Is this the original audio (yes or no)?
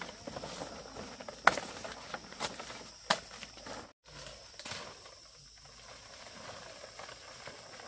yes